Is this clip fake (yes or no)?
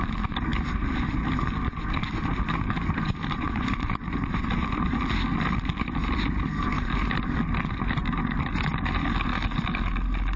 no